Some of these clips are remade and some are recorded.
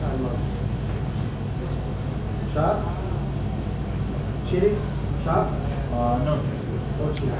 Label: recorded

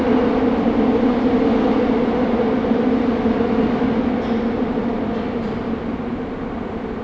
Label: recorded